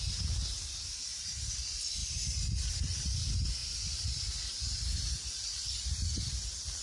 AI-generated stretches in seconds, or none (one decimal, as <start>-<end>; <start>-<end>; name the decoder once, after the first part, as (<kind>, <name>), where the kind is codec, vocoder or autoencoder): 0.0-1.1 (vocoder, BigVGAN v2); 1.6-2.0; 2.8-6.8